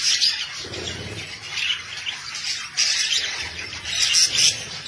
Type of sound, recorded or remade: recorded